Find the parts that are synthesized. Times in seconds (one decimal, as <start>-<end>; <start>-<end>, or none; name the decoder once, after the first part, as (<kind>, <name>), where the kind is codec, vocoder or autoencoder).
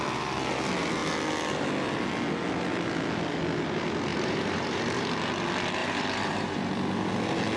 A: 4.1-5.2 (vocoder, BigVGAN v2); 5.8-6.7